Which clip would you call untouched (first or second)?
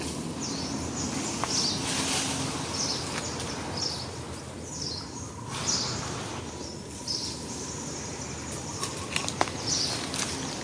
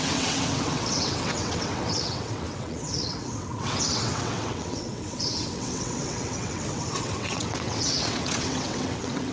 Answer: first